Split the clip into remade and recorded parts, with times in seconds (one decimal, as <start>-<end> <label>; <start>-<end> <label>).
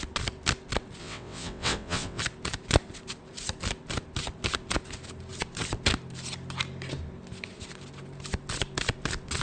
0.0-1.0 recorded; 1.0-2.2 remade; 2.2-9.4 recorded